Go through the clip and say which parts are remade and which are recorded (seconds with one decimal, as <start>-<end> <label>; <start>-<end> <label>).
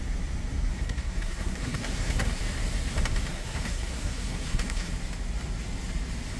0.0-0.7 recorded; 0.7-2.4 remade; 2.4-3.3 recorded; 3.3-4.9 remade; 4.9-6.4 recorded